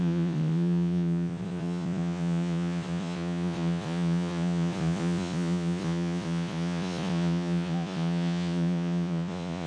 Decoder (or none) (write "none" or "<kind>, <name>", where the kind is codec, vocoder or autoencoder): vocoder, Vocos